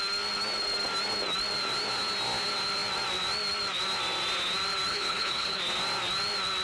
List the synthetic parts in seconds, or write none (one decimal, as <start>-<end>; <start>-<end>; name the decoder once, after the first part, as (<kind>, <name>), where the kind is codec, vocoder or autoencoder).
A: 4.9-5.6 (codec, HILCodec)